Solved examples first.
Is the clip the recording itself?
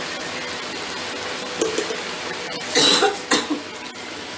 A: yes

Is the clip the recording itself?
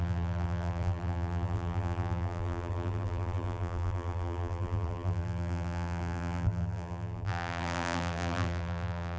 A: no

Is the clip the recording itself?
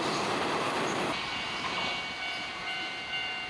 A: no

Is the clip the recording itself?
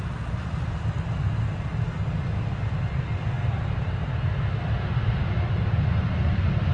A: yes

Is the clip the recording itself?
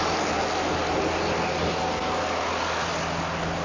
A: yes